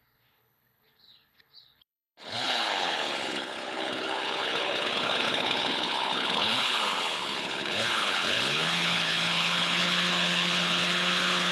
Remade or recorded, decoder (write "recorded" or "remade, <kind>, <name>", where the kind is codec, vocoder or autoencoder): remade, codec, HILCodec